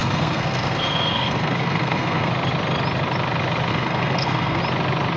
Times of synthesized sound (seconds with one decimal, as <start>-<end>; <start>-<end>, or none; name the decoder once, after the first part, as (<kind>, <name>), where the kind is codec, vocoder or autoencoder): 0.0-2.3 (codec, SNAC); 3.7-4.6